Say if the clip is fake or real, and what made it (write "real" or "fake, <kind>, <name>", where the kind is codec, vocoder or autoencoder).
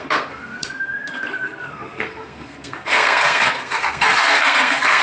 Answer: fake, codec, SNAC